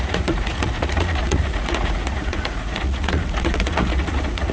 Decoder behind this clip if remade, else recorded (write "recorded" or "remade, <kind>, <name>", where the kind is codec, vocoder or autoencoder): remade, vocoder, Vocos